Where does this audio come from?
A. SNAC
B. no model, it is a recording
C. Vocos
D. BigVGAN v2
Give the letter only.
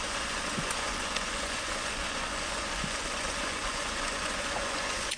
C